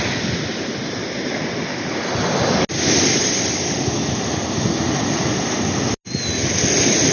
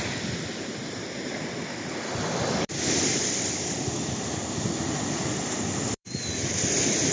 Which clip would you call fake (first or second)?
second